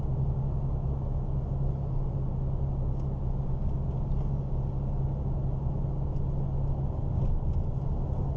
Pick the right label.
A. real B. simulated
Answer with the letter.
A